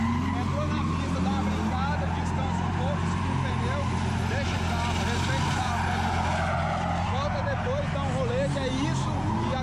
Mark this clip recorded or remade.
recorded